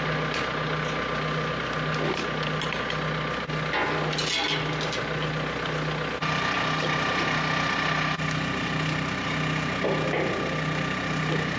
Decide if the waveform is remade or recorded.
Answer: recorded